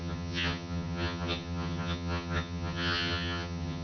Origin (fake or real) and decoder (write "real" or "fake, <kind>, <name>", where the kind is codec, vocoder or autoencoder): fake, vocoder, HiFi-GAN